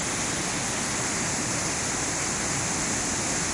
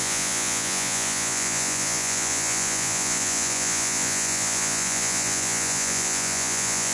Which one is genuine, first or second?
first